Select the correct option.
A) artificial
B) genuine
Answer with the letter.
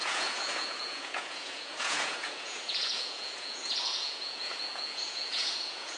A